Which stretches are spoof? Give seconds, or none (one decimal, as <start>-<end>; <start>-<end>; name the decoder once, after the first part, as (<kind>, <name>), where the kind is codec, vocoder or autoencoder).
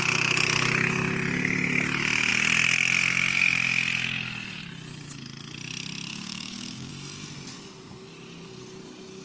6.1-6.9 (codec, DAC)